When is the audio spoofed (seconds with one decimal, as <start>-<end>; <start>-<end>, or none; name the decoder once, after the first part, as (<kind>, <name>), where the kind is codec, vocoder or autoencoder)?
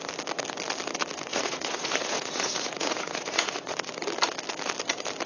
1.3-3.9 (vocoder, Vocos)